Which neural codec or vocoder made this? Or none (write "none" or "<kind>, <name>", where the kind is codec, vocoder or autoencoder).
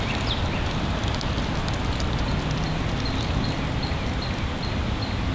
none